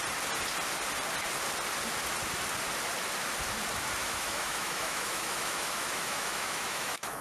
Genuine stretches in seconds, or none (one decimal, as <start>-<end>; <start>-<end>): 0.0-4.0